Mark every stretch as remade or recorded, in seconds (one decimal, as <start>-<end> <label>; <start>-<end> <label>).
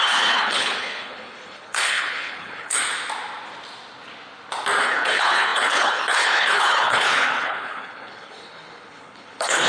0.0-2.8 remade; 2.8-4.8 recorded; 4.8-9.7 remade